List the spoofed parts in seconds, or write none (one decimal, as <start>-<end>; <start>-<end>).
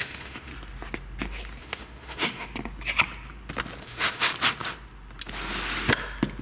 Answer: 0.0-0.5; 1.6-2.5; 3.8-4.3